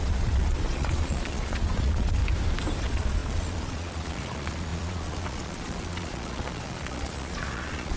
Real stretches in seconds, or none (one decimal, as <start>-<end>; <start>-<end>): 2.2-2.8